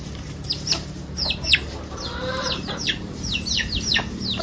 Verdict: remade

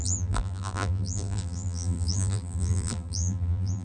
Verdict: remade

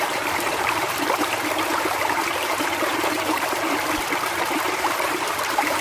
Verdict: remade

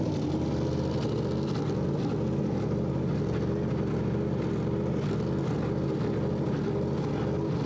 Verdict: recorded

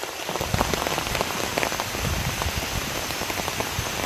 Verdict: recorded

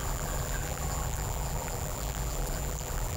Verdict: remade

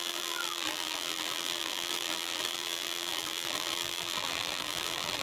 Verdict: remade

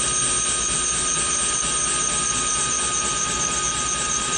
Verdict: recorded